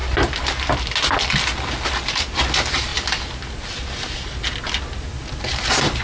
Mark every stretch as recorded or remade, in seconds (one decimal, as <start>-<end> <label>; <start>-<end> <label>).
0.0-6.0 recorded